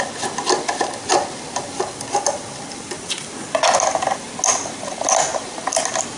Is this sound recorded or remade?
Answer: recorded